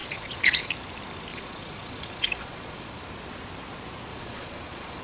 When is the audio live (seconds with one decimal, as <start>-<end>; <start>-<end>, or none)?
0.7-1.3; 3.0-4.1